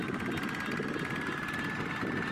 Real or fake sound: real